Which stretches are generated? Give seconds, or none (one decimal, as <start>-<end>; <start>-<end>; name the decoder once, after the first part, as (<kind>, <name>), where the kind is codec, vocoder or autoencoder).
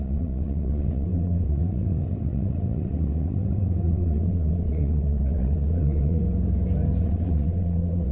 0.0-6.2 (vocoder, WaveNeXt); 7.0-8.1